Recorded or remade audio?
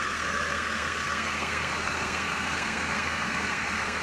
remade